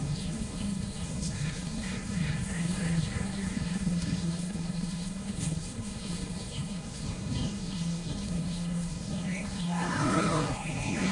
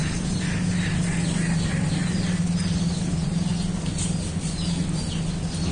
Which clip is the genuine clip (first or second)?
second